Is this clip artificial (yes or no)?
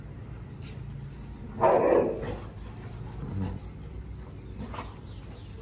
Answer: no